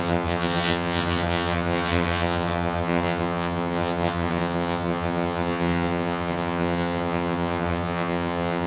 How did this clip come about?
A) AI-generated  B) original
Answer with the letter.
A